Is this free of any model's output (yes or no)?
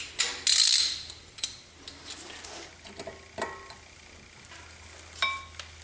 yes